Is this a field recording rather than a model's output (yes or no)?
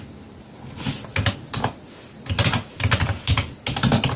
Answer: yes